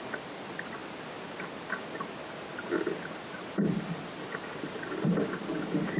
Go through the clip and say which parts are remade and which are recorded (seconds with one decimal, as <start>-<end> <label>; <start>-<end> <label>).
0.0-6.0 recorded